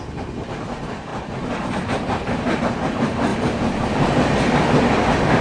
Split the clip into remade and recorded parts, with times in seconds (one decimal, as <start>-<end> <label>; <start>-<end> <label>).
0.0-1.1 recorded; 1.1-2.6 remade; 2.6-5.4 recorded